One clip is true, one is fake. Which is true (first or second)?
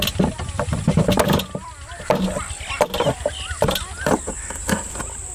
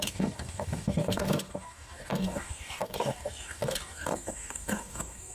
first